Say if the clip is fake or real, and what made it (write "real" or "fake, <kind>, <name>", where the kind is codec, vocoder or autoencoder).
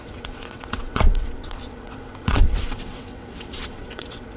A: fake, vocoder, WaveNeXt